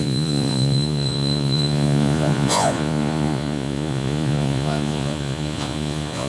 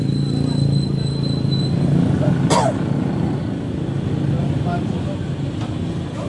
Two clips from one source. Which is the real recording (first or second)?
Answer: second